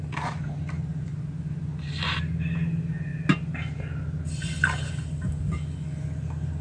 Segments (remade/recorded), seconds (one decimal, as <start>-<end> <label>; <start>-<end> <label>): 0.0-6.6 recorded